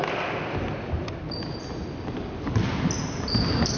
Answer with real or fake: real